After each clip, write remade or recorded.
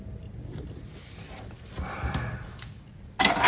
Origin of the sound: recorded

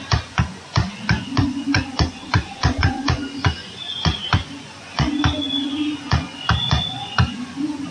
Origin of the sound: remade